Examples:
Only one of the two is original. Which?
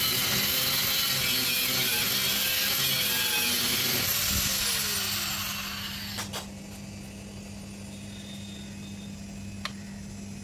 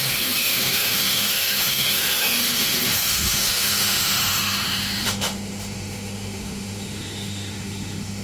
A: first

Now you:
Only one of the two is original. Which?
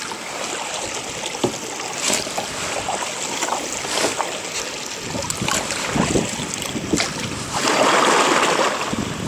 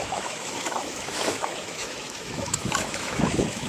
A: first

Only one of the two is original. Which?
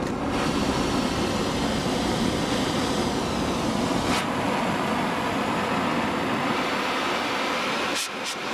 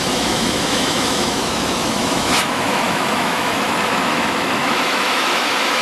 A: first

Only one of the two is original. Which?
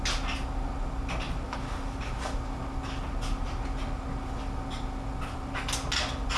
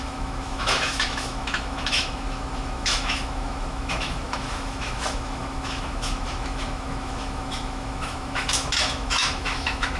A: first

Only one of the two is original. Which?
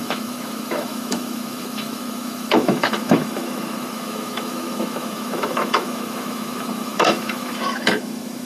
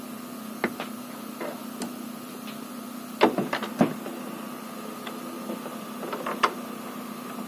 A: second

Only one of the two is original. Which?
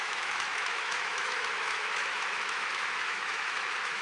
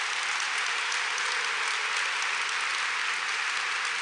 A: second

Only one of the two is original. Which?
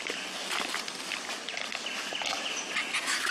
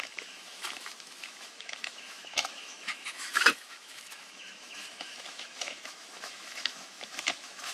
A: first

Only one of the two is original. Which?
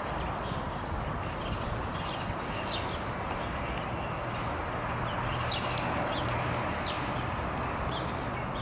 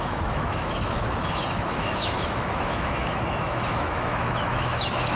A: first